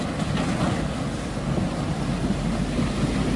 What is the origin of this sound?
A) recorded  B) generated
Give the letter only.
A